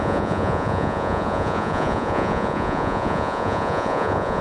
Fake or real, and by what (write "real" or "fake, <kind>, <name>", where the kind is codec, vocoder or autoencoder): fake, vocoder, Vocos